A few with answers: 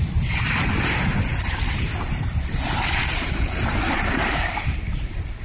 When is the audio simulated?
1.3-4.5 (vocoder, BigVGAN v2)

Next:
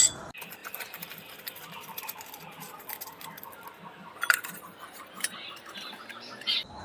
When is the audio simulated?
4.0-6.0 (vocoder, BigVGAN v2)

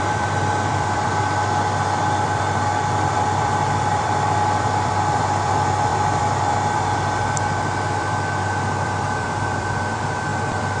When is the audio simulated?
0.0-10.8 (vocoder, BigVGAN v2)

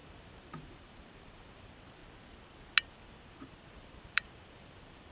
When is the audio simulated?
0.0-2.0 (vocoder, BigVGAN v2); 3.0-5.1

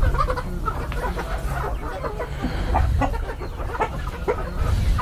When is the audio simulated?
3.9-4.6 (vocoder, BigVGAN v2)

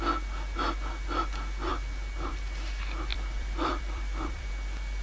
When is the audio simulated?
3.1-4.5 (vocoder, BigVGAN v2)

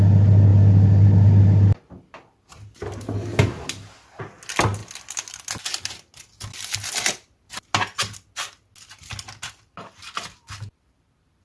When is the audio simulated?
none